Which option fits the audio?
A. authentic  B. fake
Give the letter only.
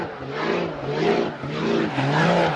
B